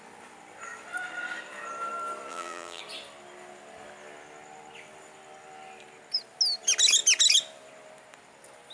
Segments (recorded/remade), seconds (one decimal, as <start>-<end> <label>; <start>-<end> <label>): 0.0-2.3 recorded; 2.3-2.8 remade; 2.8-8.7 recorded